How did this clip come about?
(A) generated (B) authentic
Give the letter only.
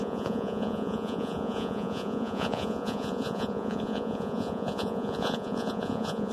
A